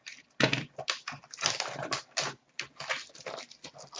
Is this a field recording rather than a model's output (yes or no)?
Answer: yes